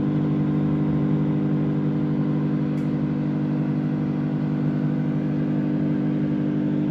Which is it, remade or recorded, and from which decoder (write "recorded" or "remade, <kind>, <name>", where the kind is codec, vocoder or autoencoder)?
recorded